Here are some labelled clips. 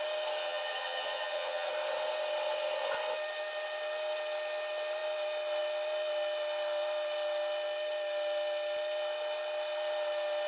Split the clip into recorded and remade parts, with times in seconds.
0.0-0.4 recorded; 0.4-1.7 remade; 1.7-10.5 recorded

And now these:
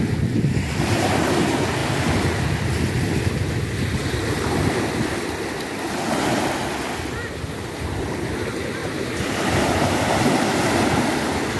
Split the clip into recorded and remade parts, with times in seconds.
0.0-8.8 recorded; 8.8-10.6 remade; 10.6-11.6 recorded